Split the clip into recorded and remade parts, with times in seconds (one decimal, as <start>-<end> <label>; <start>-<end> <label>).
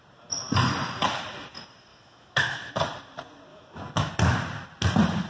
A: 0.0-1.9 recorded; 1.9-2.7 remade; 2.7-3.5 recorded; 3.5-4.1 remade; 4.1-5.3 recorded